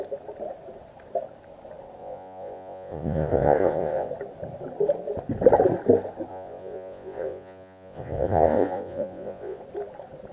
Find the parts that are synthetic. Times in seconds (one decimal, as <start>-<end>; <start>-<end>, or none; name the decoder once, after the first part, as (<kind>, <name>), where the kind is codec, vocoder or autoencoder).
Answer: 2.0-4.1 (vocoder, Vocos); 6.3-9.6